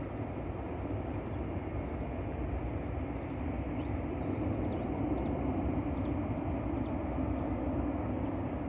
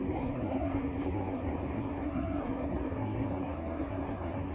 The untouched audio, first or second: first